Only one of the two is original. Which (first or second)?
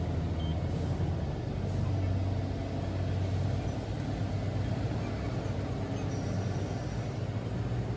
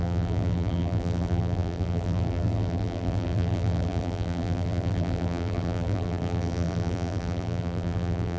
first